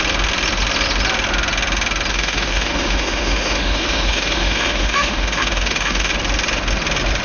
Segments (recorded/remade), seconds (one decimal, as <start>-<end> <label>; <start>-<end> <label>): 0.0-2.1 recorded; 2.1-6.1 remade; 6.1-7.2 recorded